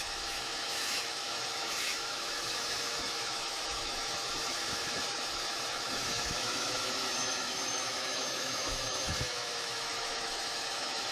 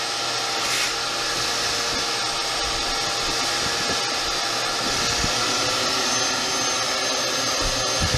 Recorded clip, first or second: second